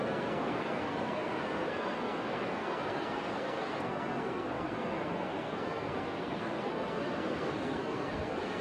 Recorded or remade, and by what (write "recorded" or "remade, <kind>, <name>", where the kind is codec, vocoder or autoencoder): remade, codec, SNAC